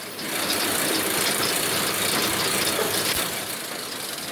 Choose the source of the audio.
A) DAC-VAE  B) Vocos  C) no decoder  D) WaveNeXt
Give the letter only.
C